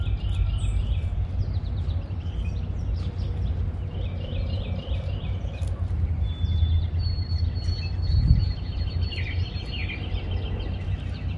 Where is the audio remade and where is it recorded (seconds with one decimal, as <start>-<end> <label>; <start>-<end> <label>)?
0.0-11.4 recorded

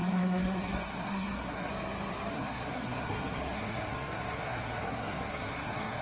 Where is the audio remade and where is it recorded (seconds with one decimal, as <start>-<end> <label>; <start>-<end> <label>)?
0.0-1.7 remade; 1.7-2.3 recorded; 2.3-6.0 remade

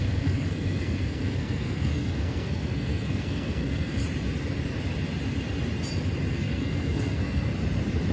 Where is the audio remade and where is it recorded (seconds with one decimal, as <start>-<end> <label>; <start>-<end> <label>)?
0.0-4.0 remade; 4.0-6.3 recorded; 6.3-7.5 remade; 7.5-8.1 recorded